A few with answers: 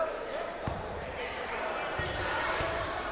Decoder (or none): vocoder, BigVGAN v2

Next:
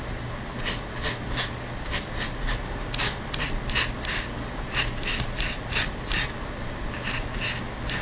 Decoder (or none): none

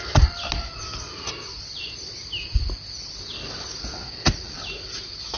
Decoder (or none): none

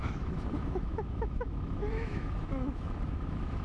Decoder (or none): autoencoder, DAC-VAE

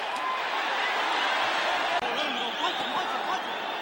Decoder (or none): none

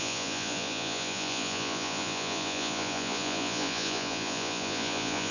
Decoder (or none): vocoder, Vocos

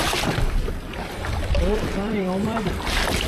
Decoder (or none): vocoder, BigVGAN v2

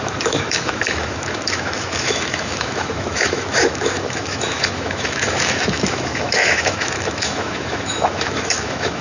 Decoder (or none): autoencoder, DAC-VAE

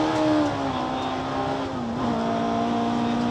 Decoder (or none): none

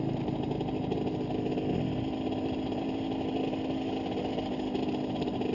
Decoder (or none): none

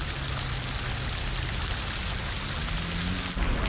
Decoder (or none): none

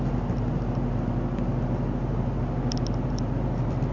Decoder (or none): none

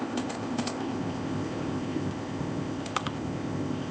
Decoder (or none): codec, ZipCodec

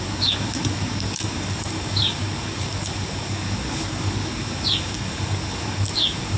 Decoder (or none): codec, DAC